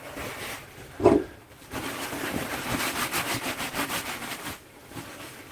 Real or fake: fake